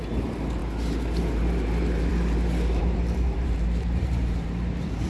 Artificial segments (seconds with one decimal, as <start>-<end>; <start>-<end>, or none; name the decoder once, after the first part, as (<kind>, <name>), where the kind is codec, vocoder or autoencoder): 2.8-5.1 (vocoder, BigVGAN v2)